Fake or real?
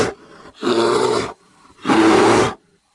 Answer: fake